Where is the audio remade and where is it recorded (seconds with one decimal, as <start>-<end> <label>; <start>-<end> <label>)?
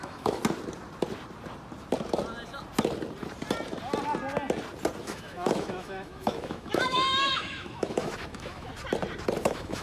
0.0-0.4 remade; 0.4-5.0 recorded; 5.0-8.7 remade; 8.7-9.4 recorded; 9.4-9.8 remade